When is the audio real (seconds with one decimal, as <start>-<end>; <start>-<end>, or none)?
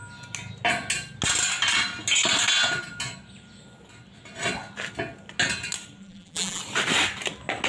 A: 0.0-6.0; 6.6-7.7